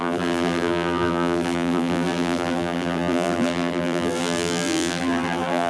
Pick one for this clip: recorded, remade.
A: remade